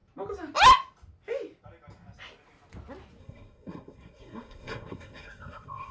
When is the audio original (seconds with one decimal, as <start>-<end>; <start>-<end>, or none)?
0.0-3.2